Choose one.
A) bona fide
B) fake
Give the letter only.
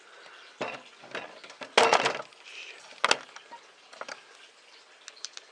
A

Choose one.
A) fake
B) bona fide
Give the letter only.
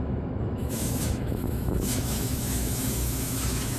A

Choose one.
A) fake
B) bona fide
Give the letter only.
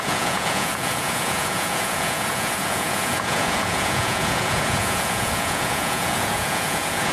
A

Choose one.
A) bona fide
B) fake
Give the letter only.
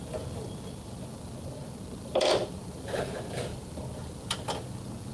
A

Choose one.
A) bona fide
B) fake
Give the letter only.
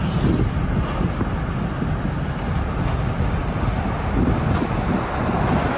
A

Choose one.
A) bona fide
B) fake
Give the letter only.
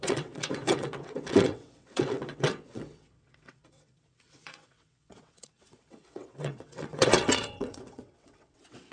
B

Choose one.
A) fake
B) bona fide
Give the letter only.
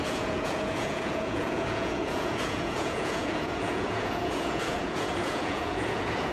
A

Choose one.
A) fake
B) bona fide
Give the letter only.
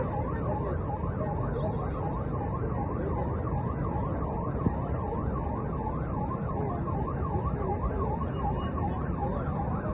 B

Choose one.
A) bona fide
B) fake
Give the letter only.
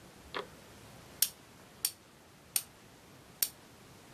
A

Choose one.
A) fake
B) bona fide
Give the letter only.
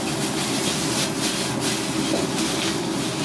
B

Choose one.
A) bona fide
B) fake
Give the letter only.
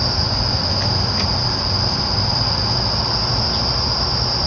A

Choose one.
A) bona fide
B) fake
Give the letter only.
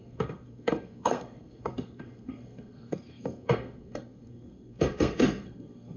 B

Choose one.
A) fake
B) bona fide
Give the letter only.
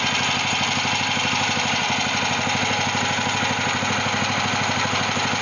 B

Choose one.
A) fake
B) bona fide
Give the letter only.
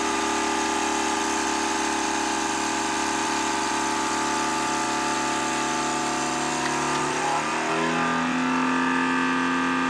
B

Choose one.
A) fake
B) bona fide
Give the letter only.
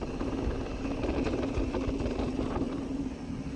B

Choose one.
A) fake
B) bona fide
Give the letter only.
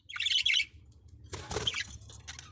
B